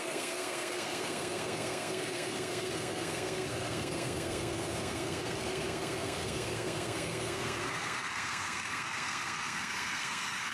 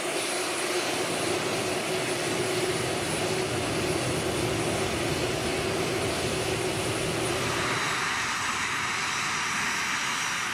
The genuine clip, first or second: second